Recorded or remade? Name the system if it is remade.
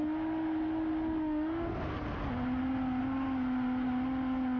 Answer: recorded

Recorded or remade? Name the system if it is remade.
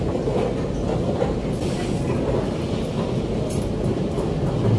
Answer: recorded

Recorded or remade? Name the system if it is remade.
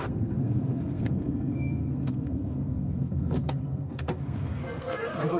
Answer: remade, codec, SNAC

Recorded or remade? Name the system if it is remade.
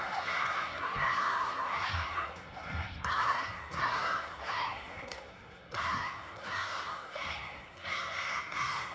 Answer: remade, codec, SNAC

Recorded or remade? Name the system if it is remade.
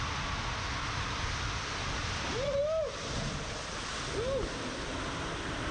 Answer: recorded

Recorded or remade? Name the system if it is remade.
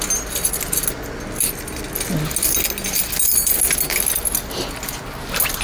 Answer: recorded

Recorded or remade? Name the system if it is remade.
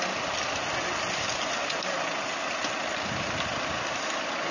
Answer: recorded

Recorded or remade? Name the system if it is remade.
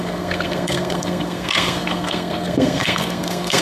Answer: remade, codec, SNAC